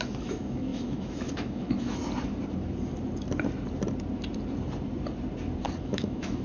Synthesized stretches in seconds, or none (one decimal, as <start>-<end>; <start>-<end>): 0.0-2.0; 5.8-6.4